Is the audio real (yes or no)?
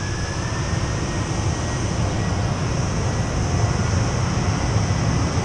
yes